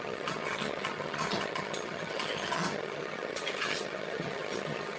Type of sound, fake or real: fake